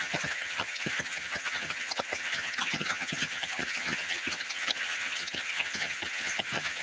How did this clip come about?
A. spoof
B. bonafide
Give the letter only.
A